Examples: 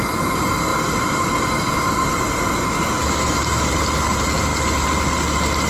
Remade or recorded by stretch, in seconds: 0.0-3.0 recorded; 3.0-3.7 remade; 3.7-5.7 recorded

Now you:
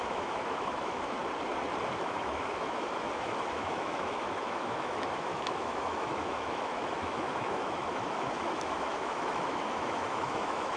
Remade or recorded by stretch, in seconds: 0.0-1.2 remade; 1.2-2.0 recorded; 2.0-10.8 remade